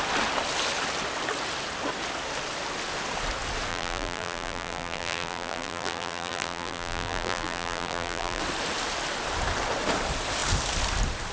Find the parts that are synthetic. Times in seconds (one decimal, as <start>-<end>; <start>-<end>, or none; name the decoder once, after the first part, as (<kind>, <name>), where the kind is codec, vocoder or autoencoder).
3.7-8.4 (vocoder, BigVGAN v2)